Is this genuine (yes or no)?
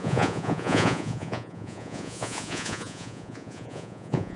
no